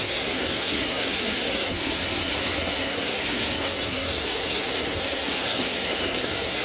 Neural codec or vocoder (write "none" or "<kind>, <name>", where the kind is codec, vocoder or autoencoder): codec, SNAC